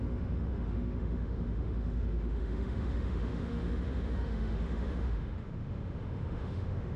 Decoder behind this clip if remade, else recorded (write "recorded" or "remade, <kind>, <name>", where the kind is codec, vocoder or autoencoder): remade, autoencoder, DAC-VAE